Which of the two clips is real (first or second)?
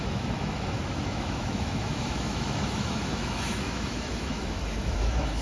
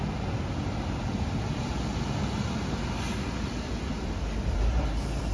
second